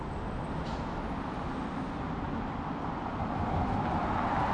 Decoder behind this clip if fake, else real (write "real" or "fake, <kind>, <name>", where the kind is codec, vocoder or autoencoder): real